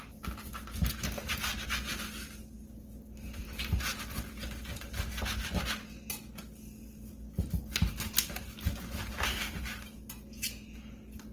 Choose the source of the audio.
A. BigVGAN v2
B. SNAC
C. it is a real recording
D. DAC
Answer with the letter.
C